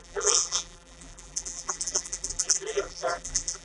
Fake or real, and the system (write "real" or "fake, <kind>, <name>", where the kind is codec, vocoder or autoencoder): fake, vocoder, BigVGAN v2